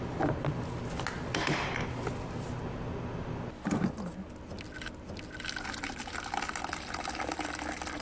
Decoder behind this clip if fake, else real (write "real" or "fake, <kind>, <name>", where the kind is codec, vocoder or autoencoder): real